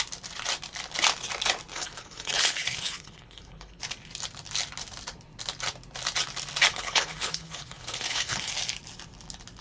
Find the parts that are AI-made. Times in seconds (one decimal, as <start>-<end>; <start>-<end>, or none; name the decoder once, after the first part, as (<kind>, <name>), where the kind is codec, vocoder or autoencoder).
1.7-3.8 (codec, HILCodec); 6.7-8.5